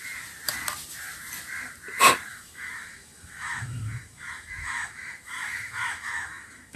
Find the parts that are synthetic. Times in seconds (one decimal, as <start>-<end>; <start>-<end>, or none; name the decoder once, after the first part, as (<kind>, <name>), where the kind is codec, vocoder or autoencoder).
2.3-6.8 (autoencoder, DAC-VAE)